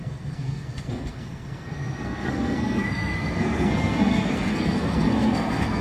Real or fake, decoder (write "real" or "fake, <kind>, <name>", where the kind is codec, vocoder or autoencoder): fake, codec, SNAC